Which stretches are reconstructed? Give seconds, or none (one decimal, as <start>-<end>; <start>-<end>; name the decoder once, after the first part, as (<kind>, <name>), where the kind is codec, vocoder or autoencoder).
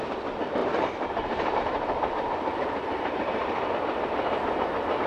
0.6-3.7 (vocoder, BigVGAN v2)